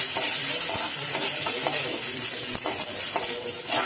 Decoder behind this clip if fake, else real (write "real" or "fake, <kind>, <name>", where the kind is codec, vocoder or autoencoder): real